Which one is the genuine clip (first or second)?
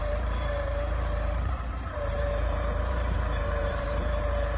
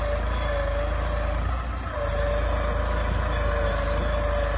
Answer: second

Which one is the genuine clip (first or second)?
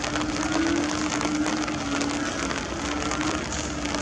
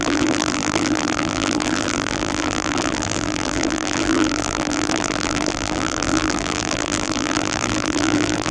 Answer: first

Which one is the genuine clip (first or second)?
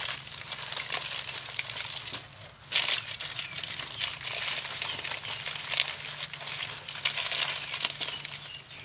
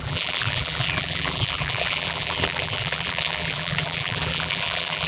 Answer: first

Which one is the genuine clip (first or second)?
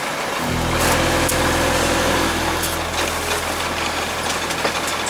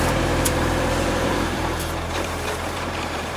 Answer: first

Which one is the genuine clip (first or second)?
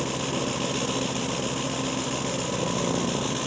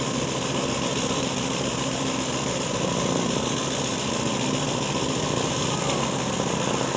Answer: first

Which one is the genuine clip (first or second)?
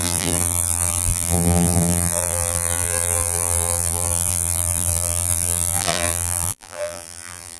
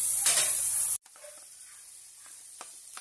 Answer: second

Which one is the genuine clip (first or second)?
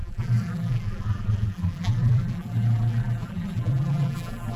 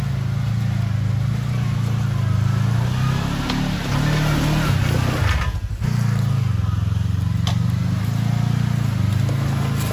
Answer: second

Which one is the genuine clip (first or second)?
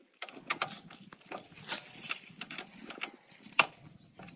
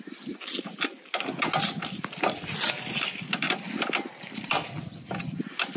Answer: second